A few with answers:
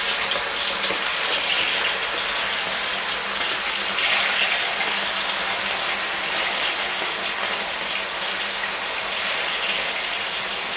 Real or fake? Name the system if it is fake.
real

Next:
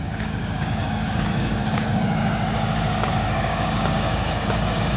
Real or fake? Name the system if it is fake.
fake, codec, DAC